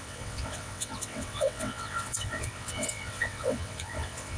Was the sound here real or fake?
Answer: fake